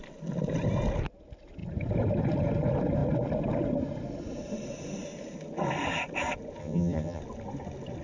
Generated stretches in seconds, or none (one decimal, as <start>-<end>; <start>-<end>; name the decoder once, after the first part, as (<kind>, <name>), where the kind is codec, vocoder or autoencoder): 6.6-7.2 (vocoder, HiFi-GAN)